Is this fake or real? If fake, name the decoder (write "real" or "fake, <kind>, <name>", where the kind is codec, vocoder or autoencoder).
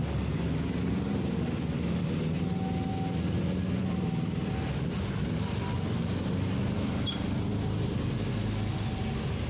real